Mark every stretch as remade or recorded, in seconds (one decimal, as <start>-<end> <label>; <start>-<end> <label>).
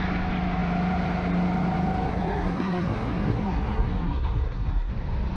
0.0-2.1 recorded; 2.1-4.9 remade; 4.9-5.4 recorded